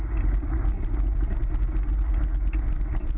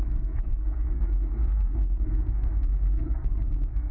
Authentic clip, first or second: first